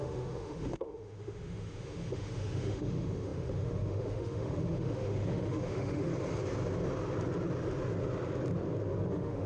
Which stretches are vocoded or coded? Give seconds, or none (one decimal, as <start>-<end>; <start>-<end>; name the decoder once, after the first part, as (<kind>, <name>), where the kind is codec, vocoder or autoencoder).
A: 0.0-6.1 (autoencoder, DAC-VAE); 9.1-9.5

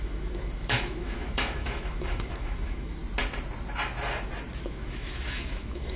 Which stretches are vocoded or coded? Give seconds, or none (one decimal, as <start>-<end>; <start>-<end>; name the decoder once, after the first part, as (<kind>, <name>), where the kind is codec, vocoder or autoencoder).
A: 0.0-3.0 (autoencoder, DAC-VAE); 4.6-6.0

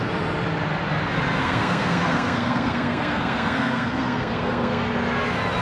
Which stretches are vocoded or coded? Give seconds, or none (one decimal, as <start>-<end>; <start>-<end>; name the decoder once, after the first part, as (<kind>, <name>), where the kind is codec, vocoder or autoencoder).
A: 1.4-4.8 (codec, SNAC)

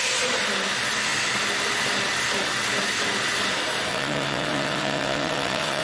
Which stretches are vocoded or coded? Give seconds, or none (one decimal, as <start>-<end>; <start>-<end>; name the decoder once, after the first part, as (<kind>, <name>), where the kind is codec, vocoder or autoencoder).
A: 3.9-5.8 (vocoder, WaveNeXt)